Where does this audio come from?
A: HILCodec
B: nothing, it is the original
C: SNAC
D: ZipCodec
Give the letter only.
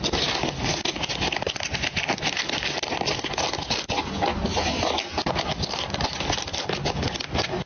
B